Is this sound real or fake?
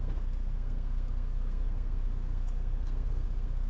fake